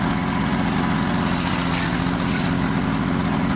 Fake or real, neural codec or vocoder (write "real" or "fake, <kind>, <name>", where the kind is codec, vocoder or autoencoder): real